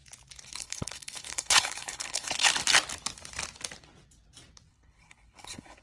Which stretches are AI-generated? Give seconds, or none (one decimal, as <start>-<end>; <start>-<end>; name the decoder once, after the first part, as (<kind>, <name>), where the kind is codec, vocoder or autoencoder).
0.5-2.5 (codec, HILCodec); 4.7-5.8